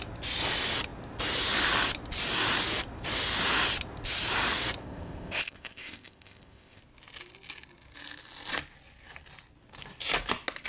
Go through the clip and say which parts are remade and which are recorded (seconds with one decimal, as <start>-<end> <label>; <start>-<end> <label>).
0.0-4.8 recorded; 4.8-6.8 remade; 6.8-10.7 recorded